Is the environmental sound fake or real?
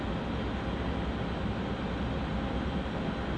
real